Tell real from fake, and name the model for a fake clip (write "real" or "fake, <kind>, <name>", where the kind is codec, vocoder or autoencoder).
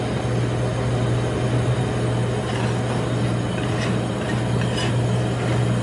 real